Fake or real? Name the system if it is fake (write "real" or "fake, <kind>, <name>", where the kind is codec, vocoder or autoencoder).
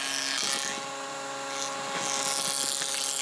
real